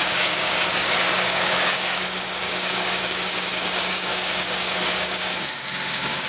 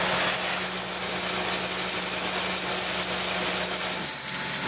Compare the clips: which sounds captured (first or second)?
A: second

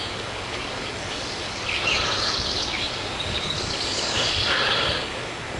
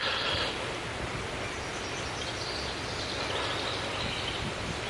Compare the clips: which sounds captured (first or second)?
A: second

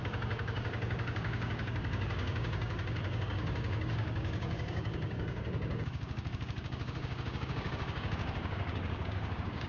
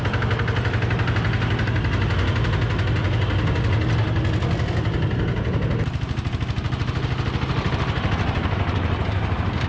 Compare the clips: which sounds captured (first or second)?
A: second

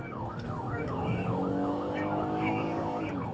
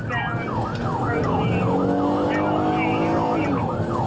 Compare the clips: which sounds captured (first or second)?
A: second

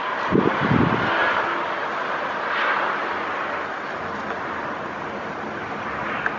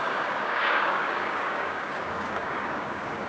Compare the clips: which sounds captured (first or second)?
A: first